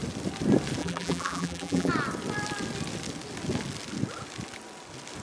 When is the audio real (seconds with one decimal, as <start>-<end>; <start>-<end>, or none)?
0.0-0.8; 1.9-5.2